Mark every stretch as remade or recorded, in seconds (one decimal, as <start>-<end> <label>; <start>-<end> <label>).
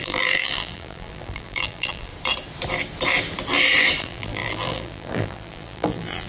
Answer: 0.0-2.1 remade; 2.1-4.0 recorded; 4.0-6.3 remade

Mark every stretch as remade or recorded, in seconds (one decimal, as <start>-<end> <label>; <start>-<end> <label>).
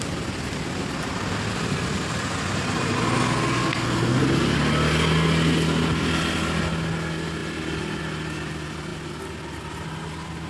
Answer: 0.0-3.6 recorded; 3.6-4.2 remade; 4.2-10.5 recorded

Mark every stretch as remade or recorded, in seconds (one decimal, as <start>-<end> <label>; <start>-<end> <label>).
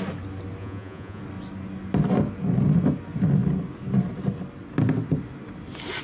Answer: 0.0-0.6 recorded; 0.6-1.2 remade; 1.2-6.0 recorded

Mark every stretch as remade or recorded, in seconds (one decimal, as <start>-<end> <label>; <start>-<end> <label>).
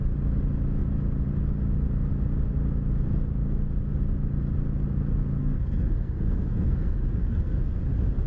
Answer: 0.0-5.4 recorded; 5.4-7.9 remade; 7.9-8.3 recorded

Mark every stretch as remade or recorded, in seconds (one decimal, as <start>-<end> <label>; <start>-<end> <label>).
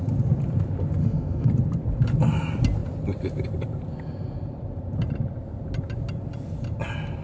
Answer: 0.0-1.0 recorded; 1.0-1.5 remade; 1.5-7.2 recorded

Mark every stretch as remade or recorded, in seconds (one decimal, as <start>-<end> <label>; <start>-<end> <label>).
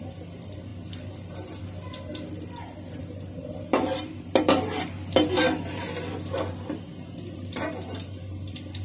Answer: 0.0-8.8 remade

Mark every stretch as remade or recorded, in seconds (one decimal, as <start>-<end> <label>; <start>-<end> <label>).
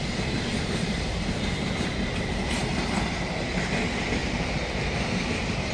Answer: 0.0-0.5 recorded; 0.5-1.1 remade; 1.1-4.2 recorded; 4.2-5.2 remade; 5.2-5.7 recorded